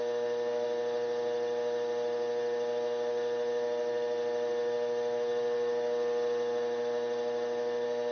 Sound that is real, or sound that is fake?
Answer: real